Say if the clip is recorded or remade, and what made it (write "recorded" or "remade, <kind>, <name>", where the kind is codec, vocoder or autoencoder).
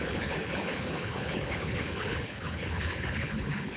remade, codec, HILCodec